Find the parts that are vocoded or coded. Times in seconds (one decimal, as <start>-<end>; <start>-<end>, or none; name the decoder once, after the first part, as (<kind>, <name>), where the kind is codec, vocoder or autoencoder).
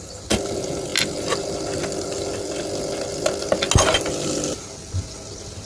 none